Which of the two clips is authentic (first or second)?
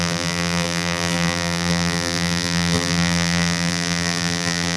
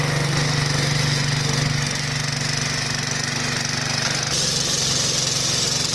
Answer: second